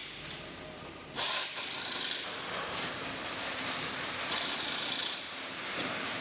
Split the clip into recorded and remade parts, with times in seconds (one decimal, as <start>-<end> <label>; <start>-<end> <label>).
0.0-0.8 recorded; 0.8-6.2 remade